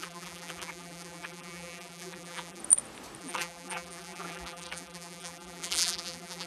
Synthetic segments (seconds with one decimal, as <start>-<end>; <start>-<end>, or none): 0.0-2.6; 3.2-6.5